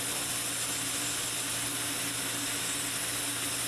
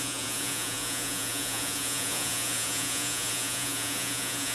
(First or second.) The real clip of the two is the first